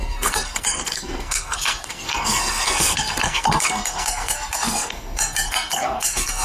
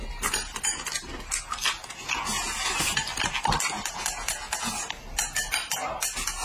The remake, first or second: first